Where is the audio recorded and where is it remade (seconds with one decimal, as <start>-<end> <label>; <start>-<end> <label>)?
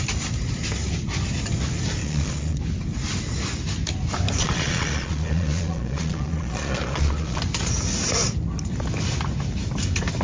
0.0-2.0 recorded; 2.0-2.6 remade; 2.6-4.4 recorded; 4.4-7.4 remade; 7.4-10.2 recorded